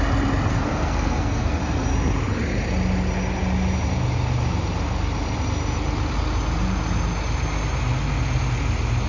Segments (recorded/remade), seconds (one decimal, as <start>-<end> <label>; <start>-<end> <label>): 0.0-0.5 recorded; 0.5-1.6 remade; 1.6-9.1 recorded